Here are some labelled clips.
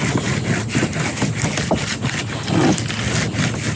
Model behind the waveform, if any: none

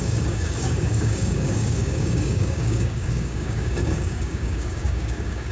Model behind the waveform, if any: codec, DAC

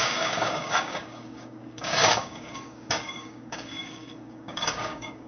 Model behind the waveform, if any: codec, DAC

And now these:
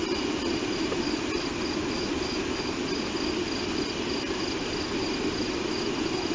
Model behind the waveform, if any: none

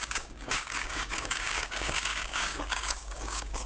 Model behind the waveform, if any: codec, DAC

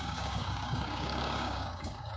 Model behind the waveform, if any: codec, DAC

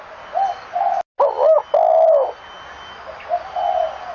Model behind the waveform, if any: none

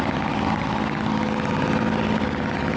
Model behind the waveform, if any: none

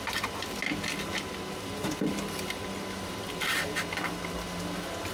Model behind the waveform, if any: none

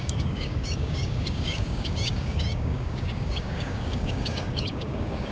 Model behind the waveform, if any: codec, DAC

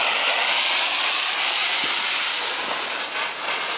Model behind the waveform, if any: none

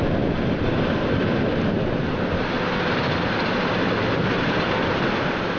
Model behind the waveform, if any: none